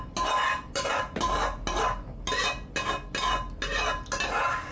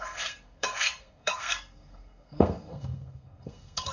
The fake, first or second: second